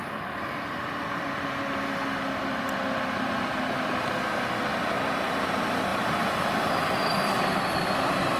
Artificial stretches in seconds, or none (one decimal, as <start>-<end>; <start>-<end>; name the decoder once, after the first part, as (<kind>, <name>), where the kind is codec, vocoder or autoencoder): 5.9-8.4 (vocoder, BigVGAN v2)